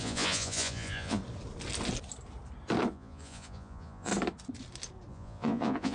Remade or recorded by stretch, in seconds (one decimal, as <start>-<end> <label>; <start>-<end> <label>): 0.0-1.2 remade; 1.2-2.9 recorded; 2.9-4.1 remade; 4.1-5.1 recorded; 5.1-5.9 remade